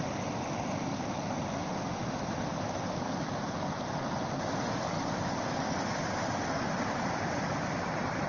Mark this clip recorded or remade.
recorded